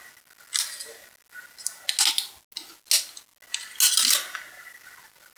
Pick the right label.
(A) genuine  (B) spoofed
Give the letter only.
A